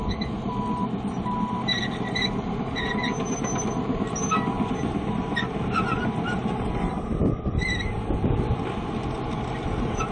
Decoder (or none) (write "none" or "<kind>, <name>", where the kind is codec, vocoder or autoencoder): none